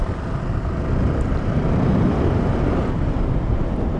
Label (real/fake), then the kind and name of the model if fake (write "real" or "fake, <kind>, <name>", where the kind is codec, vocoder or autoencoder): real